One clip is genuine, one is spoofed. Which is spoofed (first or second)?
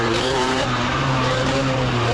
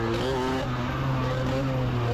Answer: first